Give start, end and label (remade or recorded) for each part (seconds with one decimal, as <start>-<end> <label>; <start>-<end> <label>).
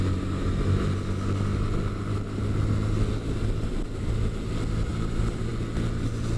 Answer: 0.0-4.9 recorded; 4.9-5.5 remade; 5.5-6.4 recorded